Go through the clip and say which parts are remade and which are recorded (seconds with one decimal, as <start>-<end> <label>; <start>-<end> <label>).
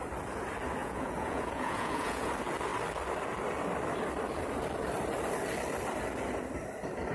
0.0-0.8 recorded; 0.8-2.3 remade; 2.3-7.1 recorded